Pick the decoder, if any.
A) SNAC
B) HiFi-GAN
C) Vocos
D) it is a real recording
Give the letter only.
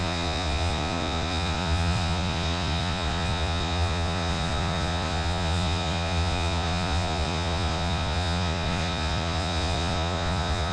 C